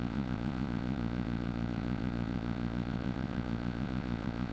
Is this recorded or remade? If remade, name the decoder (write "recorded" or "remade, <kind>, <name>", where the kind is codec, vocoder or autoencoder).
remade, vocoder, Vocos